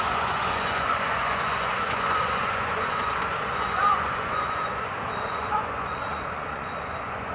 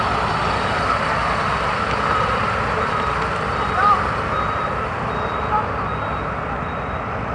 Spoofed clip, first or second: first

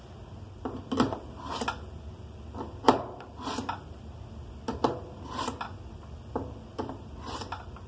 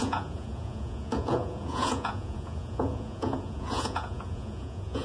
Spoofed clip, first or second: second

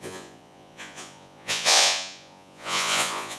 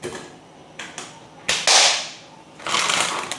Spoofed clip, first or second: first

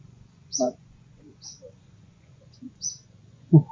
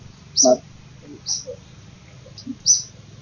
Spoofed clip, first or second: first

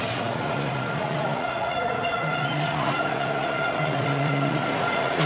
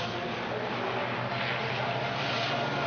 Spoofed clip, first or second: first